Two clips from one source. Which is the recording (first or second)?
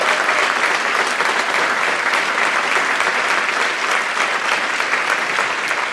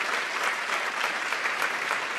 first